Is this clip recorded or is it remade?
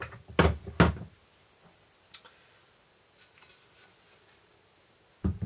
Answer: recorded